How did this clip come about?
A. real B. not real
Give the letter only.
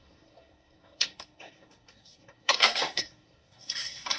B